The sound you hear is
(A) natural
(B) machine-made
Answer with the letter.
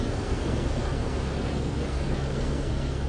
B